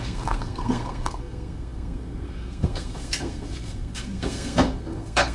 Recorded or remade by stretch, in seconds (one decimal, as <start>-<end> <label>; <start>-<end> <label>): 0.0-5.3 remade